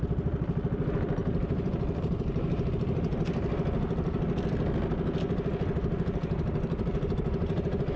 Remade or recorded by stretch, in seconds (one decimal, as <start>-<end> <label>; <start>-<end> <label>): 0.0-1.2 recorded; 1.2-2.7 remade; 2.7-8.0 recorded